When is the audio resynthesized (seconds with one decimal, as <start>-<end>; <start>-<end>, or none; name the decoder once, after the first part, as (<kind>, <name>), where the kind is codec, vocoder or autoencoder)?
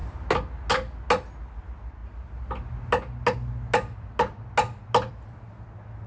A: none